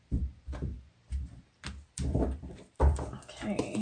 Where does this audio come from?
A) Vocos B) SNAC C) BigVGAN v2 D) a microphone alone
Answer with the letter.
C